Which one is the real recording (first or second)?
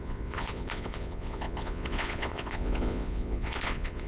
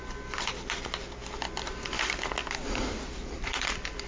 second